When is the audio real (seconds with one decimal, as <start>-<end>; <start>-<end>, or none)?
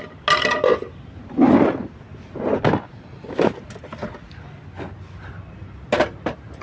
0.0-6.6